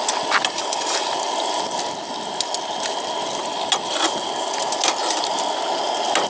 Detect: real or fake real